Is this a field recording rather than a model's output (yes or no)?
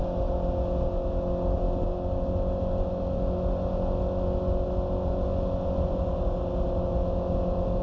yes